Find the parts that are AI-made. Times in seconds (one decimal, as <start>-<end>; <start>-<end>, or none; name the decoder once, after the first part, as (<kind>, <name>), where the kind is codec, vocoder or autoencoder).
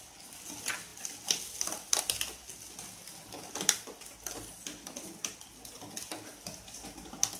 none